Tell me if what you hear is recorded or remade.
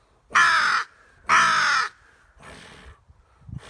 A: recorded